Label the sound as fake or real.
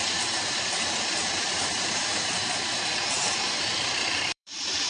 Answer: fake